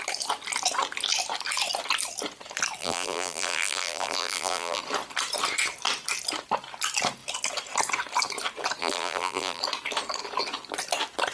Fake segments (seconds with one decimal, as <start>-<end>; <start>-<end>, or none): 2.8-4.8; 8.8-9.6